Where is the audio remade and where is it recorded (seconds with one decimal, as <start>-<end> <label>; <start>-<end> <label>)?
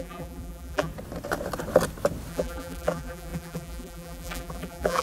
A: 0.0-0.9 remade; 0.9-2.3 recorded; 2.3-5.0 remade